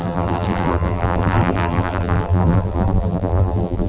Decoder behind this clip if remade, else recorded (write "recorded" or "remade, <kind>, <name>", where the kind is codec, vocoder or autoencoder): remade, vocoder, BigVGAN v2